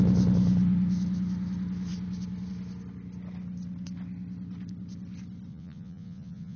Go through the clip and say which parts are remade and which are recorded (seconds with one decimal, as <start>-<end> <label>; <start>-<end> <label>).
0.0-5.5 recorded; 5.5-6.6 remade